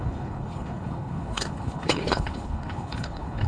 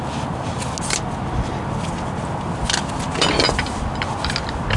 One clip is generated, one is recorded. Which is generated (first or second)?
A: first